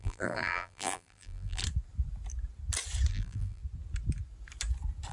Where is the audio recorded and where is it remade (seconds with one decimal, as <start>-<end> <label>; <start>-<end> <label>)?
0.0-1.6 remade; 1.6-3.1 recorded; 3.1-3.6 remade; 3.6-5.1 recorded